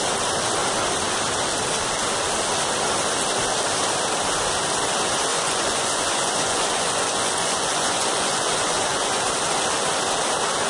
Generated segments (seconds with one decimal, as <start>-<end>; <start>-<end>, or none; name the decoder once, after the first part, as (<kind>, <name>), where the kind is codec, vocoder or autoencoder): 5.3-9.3 (vocoder, Vocos)